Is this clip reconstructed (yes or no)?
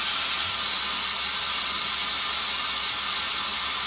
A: no